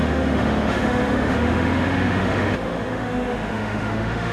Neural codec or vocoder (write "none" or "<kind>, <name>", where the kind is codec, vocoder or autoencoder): autoencoder, DAC-VAE